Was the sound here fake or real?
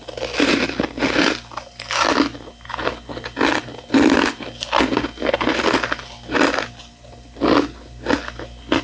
real